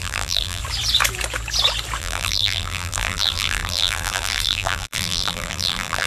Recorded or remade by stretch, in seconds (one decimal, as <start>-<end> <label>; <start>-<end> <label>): 0.0-0.6 remade; 0.6-2.0 recorded; 2.0-6.1 remade